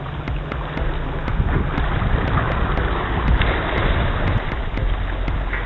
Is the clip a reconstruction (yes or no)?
no